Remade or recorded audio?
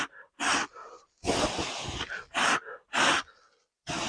recorded